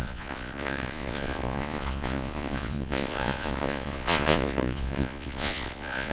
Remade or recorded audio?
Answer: remade